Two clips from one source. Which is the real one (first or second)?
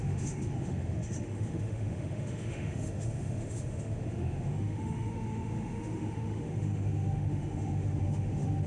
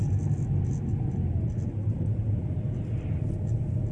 second